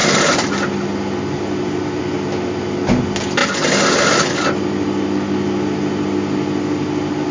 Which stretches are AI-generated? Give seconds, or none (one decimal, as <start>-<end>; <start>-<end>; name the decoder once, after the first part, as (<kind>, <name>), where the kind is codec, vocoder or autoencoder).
none